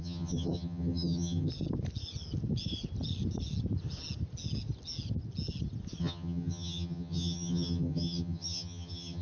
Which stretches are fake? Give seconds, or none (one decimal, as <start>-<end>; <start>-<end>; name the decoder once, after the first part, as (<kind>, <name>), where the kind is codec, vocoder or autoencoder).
0.0-1.5 (vocoder, HiFi-GAN); 6.0-9.2